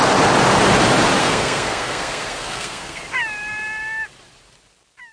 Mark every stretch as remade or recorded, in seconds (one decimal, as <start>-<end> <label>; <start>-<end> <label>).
0.0-1.2 recorded; 1.2-3.0 remade; 3.0-5.1 recorded